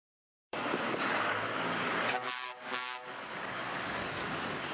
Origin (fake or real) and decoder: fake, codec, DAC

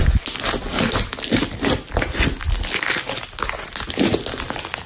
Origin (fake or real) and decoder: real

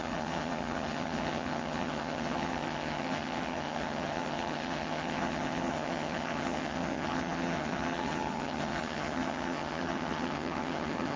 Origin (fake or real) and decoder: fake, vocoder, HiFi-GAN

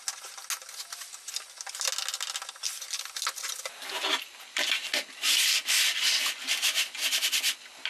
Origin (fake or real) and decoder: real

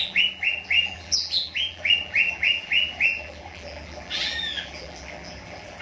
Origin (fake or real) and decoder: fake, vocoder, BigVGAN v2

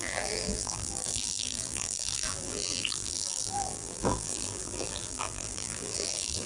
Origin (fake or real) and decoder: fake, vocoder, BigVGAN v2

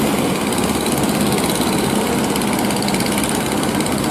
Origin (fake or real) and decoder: real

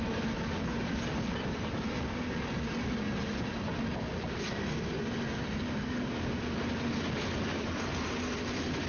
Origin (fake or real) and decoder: real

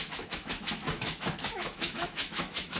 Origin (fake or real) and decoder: fake, autoencoder, DAC-VAE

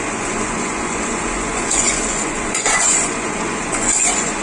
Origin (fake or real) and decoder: fake, vocoder, Vocos